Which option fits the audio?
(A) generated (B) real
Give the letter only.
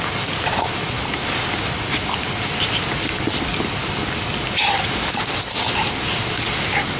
B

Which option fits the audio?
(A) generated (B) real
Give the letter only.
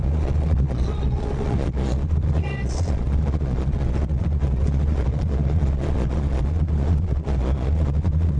A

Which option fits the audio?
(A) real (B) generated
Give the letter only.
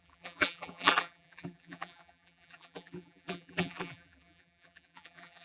B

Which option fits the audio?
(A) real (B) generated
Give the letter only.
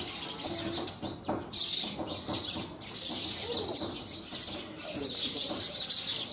A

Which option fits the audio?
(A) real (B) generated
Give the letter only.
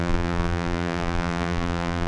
B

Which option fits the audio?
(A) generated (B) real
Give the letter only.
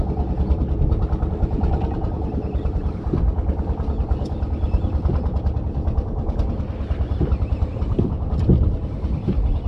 B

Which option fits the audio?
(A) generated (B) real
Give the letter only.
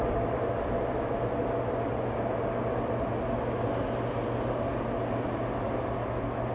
B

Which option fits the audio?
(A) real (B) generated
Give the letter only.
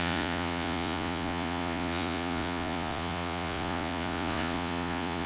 B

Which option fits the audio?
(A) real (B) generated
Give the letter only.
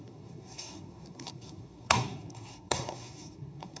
B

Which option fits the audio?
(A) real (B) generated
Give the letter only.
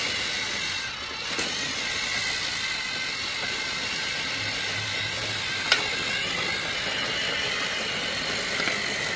A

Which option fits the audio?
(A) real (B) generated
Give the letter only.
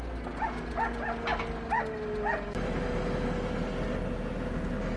A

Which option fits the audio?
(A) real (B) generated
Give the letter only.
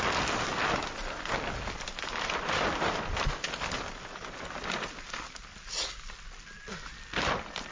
A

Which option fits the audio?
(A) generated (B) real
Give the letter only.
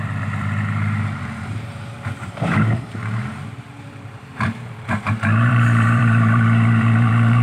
A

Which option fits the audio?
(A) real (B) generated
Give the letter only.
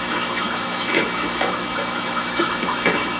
B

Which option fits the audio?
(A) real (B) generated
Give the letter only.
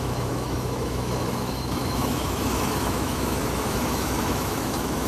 B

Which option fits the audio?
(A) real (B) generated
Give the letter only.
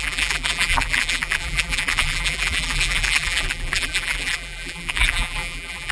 B